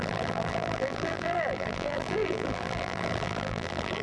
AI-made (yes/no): yes